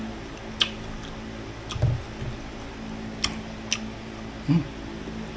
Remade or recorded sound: recorded